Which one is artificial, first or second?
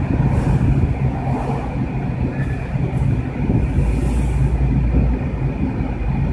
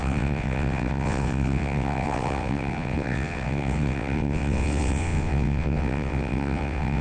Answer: second